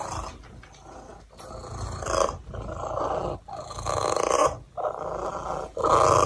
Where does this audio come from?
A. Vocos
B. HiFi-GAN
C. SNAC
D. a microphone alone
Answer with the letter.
D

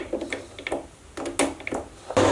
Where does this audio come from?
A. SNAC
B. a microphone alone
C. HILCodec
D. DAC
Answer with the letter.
B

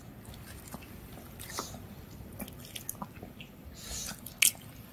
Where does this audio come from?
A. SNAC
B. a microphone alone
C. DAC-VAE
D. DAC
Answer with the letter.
B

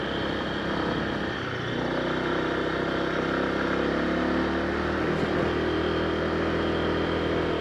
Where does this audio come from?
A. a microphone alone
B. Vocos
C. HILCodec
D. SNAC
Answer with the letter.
A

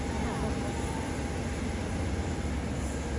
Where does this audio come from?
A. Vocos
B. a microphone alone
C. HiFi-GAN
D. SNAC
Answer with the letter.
B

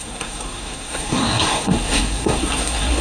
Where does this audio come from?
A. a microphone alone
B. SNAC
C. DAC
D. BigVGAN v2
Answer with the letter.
B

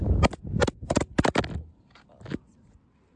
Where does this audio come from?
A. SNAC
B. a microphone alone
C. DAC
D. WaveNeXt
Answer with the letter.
B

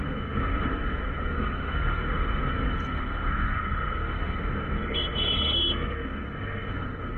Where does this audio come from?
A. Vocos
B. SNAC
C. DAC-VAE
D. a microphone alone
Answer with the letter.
B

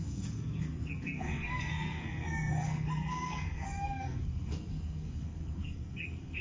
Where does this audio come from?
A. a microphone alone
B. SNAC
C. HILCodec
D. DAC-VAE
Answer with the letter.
B